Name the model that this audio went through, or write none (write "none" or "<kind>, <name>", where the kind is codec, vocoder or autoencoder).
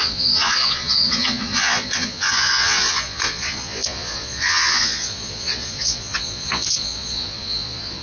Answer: vocoder, Vocos